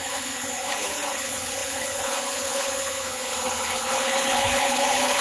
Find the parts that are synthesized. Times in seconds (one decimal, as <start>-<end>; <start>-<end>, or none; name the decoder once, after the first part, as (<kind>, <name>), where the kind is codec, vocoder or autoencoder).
0.0-5.2 (codec, HILCodec)